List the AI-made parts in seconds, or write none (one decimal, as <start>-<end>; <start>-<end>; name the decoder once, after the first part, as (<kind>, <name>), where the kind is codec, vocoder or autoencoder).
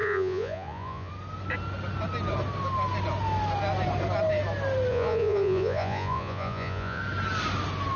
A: 0.0-1.1 (vocoder, Vocos); 4.9-7.0